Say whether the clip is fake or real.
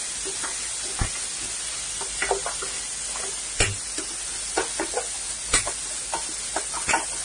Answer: real